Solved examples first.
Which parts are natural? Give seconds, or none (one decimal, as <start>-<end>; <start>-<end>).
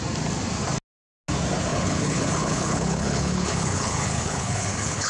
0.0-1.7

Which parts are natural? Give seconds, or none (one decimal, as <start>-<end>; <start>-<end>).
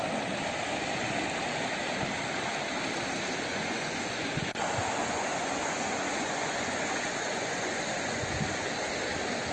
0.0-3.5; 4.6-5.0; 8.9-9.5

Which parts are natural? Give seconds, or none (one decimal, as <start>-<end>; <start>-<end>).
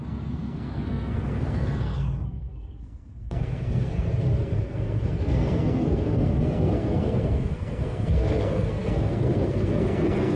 none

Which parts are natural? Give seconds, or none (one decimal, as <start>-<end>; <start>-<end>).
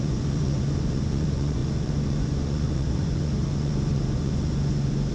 none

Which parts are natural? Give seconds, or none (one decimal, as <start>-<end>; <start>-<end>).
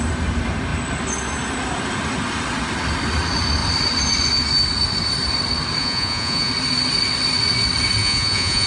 0.0-5.8; 6.5-8.0